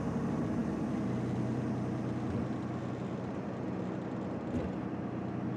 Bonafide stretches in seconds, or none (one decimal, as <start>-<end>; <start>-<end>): 0.0-5.6

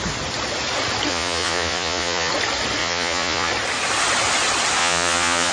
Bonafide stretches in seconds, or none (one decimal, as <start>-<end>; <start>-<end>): 0.0-1.1; 2.3-2.8; 3.5-4.8

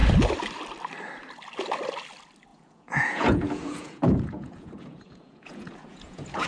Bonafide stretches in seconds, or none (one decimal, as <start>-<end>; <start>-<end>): 0.0-2.5

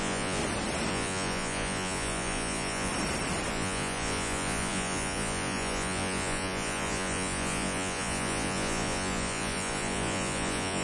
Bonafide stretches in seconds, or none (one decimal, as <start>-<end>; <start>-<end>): 0.4-0.9; 2.9-3.5

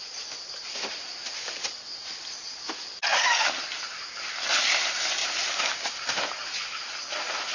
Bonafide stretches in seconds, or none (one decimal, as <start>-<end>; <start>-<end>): 0.0-7.5